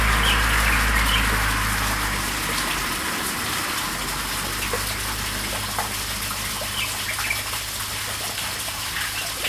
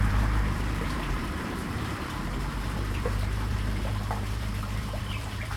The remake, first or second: second